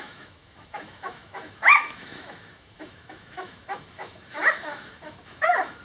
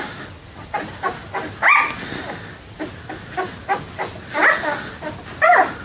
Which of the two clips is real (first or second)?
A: second